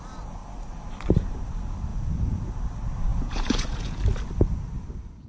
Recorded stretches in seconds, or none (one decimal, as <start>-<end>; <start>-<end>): 0.0-1.9; 2.5-3.1; 4.0-5.3